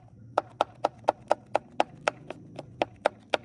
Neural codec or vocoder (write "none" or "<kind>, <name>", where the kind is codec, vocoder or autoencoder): none